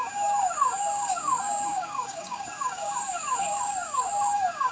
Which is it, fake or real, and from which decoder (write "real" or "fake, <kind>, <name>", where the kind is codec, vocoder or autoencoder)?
fake, codec, DAC